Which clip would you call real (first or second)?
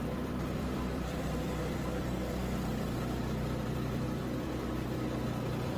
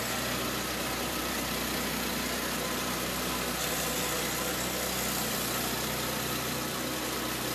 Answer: second